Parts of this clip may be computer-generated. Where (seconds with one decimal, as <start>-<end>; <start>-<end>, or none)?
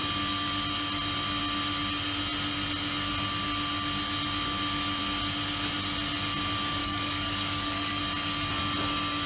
6.8-8.0